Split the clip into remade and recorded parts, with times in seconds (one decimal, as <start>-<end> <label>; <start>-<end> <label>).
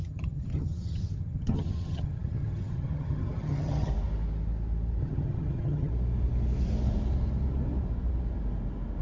0.0-3.9 remade; 3.9-5.0 recorded; 5.0-5.9 remade; 5.9-9.0 recorded